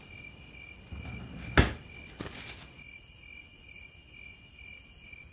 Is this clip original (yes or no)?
yes